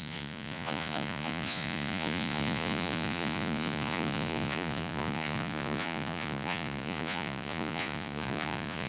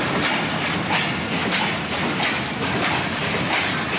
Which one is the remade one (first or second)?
first